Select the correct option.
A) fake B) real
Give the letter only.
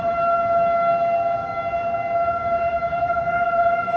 A